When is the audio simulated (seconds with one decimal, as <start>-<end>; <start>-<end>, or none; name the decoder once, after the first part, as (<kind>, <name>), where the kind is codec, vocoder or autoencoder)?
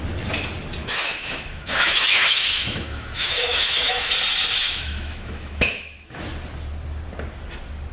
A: 0.8-4.1 (autoencoder, DAC-VAE); 4.6-6.2